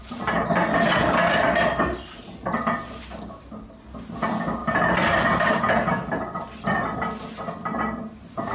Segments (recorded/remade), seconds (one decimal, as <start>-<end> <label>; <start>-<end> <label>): 0.0-8.5 recorded